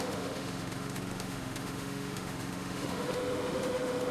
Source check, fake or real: fake